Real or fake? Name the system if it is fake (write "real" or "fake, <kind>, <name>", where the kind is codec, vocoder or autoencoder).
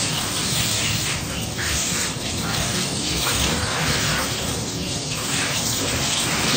fake, codec, DAC